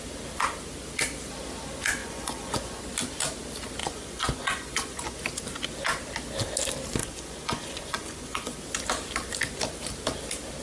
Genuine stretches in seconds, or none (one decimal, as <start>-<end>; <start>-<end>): 0.0-2.0; 2.8-3.8; 5.2-7.0; 8.6-10.6